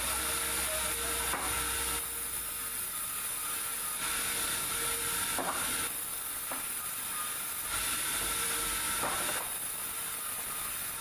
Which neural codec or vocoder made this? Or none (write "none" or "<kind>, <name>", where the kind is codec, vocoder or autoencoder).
none